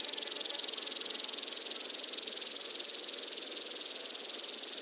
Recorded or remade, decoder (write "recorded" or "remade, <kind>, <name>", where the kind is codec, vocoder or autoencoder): recorded